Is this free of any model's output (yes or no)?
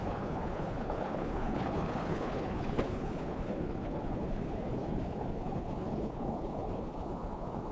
no